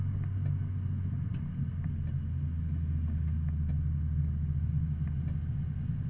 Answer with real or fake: real